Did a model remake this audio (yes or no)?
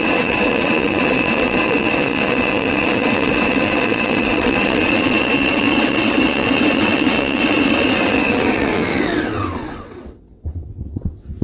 yes